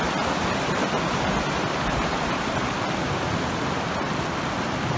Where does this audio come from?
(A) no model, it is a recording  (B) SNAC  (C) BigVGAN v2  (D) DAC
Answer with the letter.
A